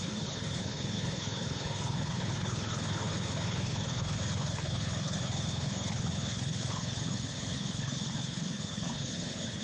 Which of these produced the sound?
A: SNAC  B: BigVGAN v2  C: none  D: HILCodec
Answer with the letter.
D